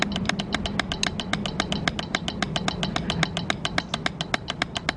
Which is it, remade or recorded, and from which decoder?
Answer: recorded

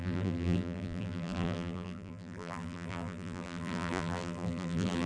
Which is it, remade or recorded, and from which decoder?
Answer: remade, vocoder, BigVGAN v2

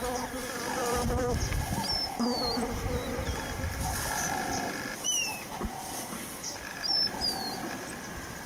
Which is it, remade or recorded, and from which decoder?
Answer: remade, vocoder, BigVGAN v2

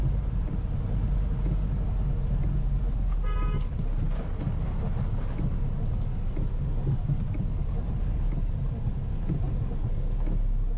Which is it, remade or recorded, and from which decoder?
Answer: recorded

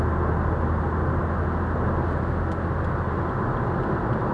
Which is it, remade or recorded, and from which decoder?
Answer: recorded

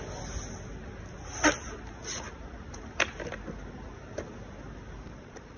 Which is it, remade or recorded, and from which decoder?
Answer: recorded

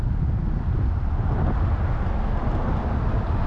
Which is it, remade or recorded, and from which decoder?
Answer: recorded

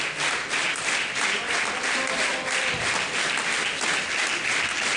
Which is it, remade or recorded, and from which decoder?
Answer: recorded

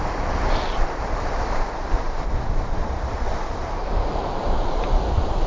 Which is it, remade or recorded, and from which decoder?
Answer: remade, vocoder, BigVGAN v2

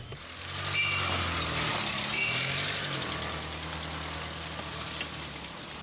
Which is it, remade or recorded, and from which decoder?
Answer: recorded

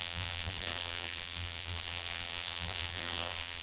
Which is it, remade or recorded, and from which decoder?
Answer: remade, vocoder, BigVGAN v2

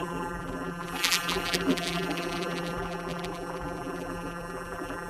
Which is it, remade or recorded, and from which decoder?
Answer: remade, vocoder, BigVGAN v2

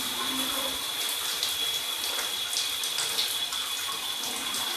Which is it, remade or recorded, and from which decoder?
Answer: recorded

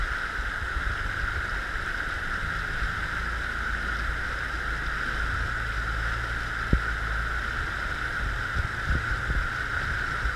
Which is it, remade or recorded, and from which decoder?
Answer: recorded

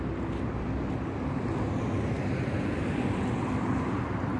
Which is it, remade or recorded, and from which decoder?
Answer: recorded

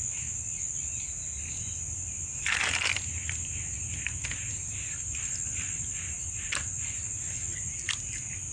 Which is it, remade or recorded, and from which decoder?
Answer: recorded